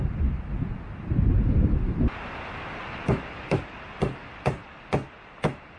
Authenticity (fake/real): real